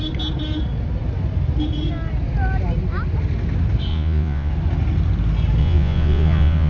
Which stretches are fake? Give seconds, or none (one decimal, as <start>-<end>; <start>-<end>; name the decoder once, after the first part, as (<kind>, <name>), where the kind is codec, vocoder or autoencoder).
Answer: 3.9-4.5 (vocoder, Vocos); 5.6-6.7